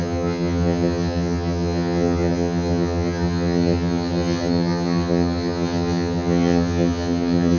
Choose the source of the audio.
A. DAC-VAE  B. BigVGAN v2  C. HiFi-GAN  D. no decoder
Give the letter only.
C